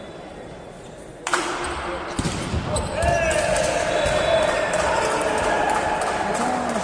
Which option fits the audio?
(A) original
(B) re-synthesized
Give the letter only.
B